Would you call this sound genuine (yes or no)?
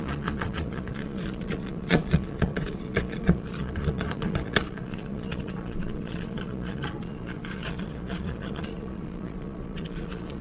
no